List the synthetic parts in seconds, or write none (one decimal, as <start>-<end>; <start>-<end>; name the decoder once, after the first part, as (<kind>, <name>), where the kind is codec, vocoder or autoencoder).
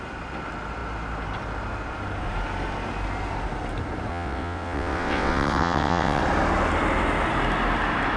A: 4.1-6.2 (vocoder, WaveNeXt)